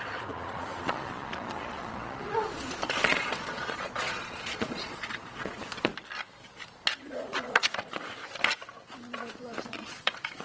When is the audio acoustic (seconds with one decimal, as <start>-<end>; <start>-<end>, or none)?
5.9-7.0; 8.2-9.7